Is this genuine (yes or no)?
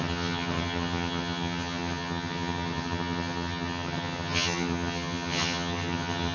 no